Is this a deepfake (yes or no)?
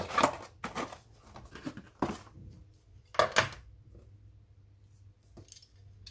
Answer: no